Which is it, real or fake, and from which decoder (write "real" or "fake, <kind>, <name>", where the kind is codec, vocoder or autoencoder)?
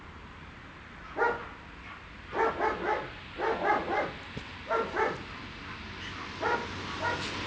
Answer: real